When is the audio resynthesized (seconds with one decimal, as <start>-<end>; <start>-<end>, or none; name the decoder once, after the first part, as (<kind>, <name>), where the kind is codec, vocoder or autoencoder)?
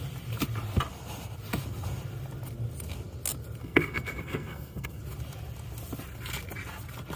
3.6-5.0 (codec, SNAC)